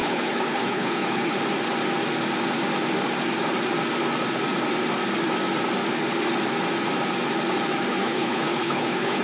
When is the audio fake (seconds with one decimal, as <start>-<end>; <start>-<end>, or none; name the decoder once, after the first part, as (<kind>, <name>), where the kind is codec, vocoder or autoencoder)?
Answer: 0.0-1.4 (codec, HILCodec); 7.9-9.2